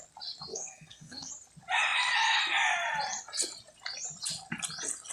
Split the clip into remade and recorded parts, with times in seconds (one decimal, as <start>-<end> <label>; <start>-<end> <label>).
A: 0.0-0.5 recorded; 0.5-1.3 remade; 1.3-5.1 recorded